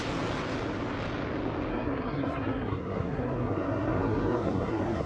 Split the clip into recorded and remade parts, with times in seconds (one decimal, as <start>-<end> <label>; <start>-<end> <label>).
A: 0.0-1.7 recorded; 1.7-5.1 remade